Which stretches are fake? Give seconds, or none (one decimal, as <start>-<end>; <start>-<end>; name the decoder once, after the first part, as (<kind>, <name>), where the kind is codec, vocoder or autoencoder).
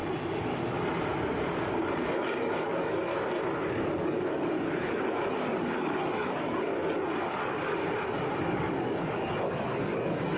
1.6-3.1 (codec, DAC); 3.7-7.8; 8.4-10.4